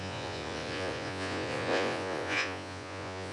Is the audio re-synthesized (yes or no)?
yes